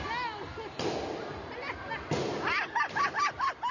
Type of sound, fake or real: real